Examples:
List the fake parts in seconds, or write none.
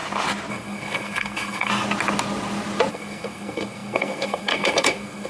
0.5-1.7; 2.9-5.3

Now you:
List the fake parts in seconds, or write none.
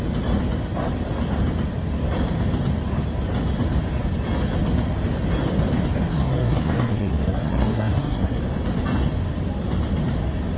6.1-8.4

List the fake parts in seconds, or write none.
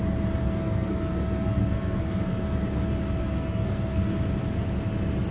0.4-2.4; 3.2-4.2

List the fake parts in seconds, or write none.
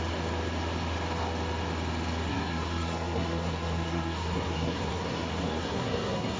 2.3-6.4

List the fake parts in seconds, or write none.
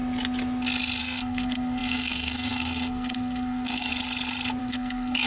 1.0-3.9; 4.6-5.3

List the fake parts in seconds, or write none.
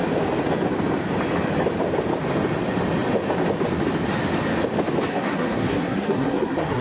5.1-6.8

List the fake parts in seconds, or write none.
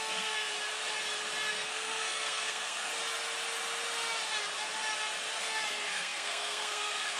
0.0-0.5; 1.5-2.9; 5.4-7.2